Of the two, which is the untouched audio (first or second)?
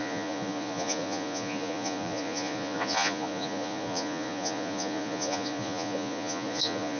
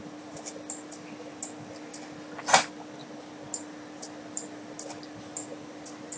second